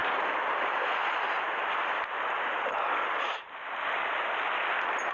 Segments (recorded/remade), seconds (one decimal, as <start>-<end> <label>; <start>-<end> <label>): 0.0-5.1 recorded